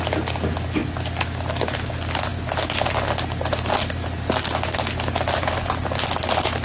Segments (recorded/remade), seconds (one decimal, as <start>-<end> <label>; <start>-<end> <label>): 0.0-6.6 recorded